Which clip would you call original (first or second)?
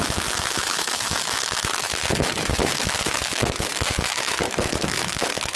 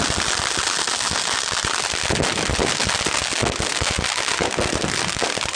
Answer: second